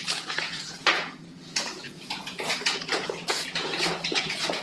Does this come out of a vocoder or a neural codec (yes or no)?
yes